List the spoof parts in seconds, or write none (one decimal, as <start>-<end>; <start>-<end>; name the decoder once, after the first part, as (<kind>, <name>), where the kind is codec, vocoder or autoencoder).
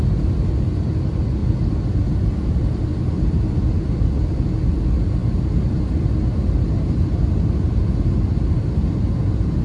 1.4-4.7 (vocoder, BigVGAN v2)